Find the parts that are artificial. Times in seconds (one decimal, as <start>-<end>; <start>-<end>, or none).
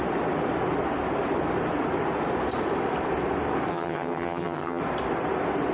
3.7-4.8